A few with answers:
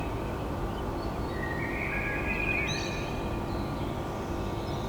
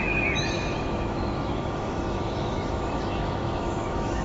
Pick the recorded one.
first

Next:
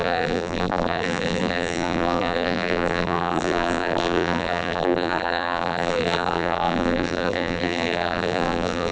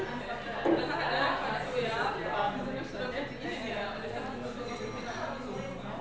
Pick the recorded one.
second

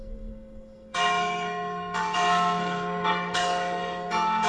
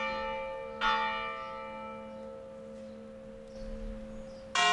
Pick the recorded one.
second